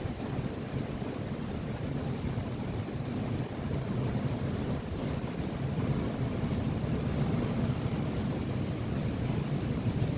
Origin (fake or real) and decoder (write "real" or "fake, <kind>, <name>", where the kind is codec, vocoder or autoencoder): fake, vocoder, BigVGAN v2